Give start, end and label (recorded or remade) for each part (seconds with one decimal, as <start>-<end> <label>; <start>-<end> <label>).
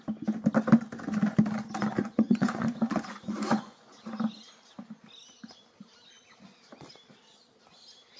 0.0-2.0 recorded; 2.0-4.5 remade; 4.5-8.2 recorded